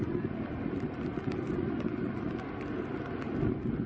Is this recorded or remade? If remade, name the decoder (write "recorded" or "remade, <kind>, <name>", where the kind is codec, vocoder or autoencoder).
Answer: recorded